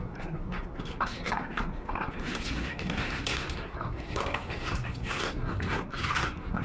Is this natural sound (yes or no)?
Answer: no